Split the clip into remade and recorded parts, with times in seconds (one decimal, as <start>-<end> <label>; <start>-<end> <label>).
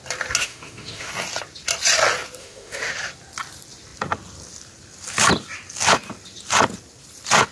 0.0-0.4 recorded; 0.4-1.1 remade; 1.1-2.4 recorded; 2.4-2.9 remade; 2.9-7.5 recorded